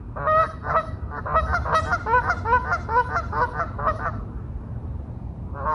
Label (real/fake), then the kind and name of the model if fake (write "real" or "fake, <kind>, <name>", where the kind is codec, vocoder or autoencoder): real